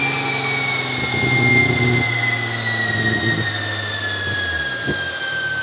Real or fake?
real